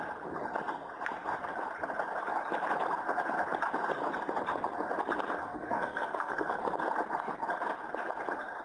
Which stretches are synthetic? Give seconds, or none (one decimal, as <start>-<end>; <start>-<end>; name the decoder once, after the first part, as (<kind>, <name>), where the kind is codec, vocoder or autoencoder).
5.4-6.6 (codec, SNAC)